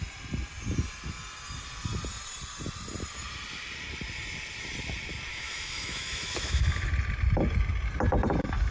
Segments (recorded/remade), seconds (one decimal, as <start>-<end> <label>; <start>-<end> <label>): 0.0-5.3 recorded; 5.3-6.6 remade; 6.6-8.7 recorded